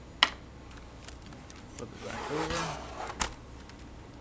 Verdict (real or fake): real